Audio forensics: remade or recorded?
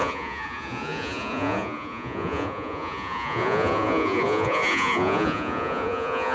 remade